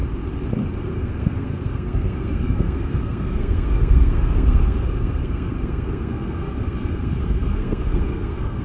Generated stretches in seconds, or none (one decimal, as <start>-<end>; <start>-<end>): 0.8-8.6